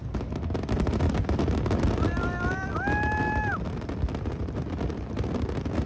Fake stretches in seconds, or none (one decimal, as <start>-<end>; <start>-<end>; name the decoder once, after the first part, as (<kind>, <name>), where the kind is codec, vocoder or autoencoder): none